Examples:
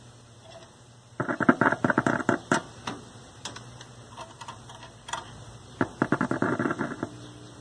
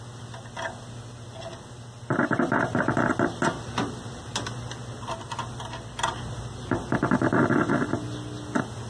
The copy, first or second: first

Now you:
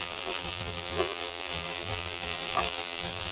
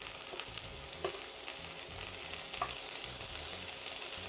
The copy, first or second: first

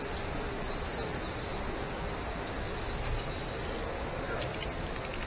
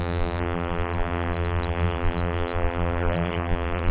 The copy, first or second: second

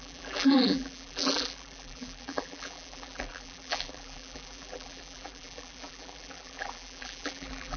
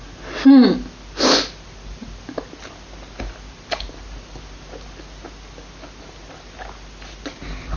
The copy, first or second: first